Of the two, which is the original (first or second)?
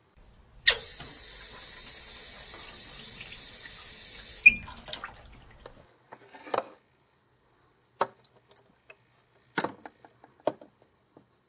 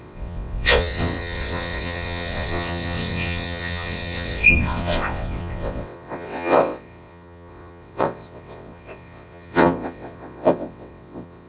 first